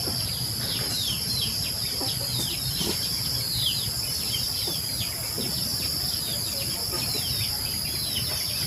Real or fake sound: fake